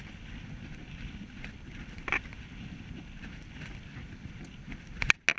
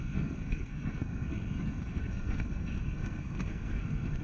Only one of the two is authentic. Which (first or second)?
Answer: first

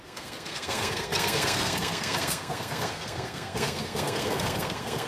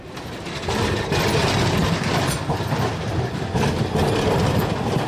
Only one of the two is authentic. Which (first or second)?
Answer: second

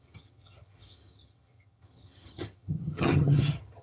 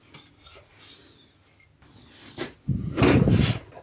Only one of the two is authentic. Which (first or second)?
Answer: second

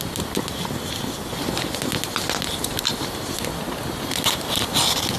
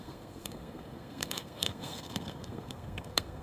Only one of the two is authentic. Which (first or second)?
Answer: first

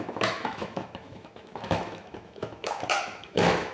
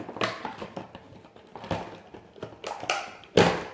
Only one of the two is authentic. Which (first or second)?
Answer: second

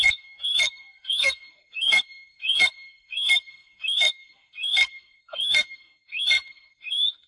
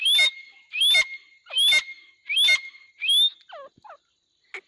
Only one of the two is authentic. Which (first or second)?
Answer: second